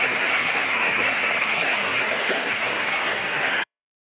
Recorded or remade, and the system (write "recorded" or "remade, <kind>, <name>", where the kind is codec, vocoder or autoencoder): remade, codec, SNAC